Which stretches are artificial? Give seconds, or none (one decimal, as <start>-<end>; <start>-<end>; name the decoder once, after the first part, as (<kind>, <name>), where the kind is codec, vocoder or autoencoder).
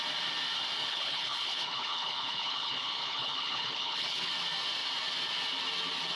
0.8-4.3 (codec, HILCodec)